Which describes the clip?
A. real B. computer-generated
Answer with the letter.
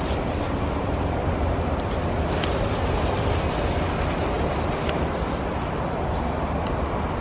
A